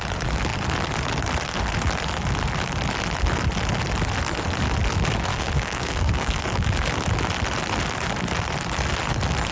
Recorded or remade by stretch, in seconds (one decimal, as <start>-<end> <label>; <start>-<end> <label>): 0.0-5.3 recorded; 5.3-6.7 remade; 6.7-9.5 recorded